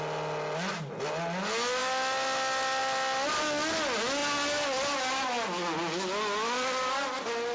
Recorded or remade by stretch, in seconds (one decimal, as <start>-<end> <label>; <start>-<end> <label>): 0.0-7.5 recorded